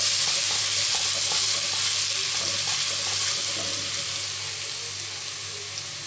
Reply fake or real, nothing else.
real